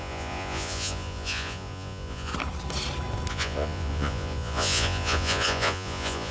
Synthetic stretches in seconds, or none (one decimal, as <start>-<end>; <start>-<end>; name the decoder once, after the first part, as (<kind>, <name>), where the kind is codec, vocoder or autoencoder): 0.0-2.3 (vocoder, Vocos); 3.3-6.3